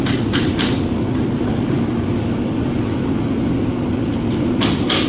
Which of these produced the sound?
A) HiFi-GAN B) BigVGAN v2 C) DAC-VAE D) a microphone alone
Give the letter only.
D